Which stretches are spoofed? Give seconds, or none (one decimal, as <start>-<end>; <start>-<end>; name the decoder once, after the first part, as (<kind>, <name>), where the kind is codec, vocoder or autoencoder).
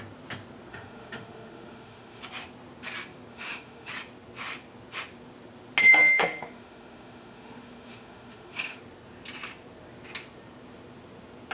0.7-2.2 (autoencoder, DAC-VAE); 3.3-3.9; 5.9-8.8